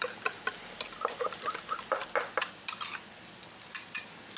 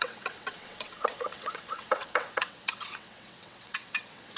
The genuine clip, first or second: first